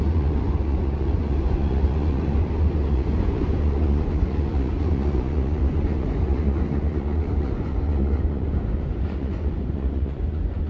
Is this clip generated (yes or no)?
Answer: yes